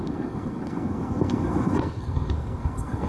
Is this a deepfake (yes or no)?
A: yes